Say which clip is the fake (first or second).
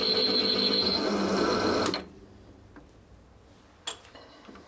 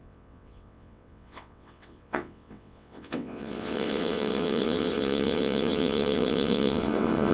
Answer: second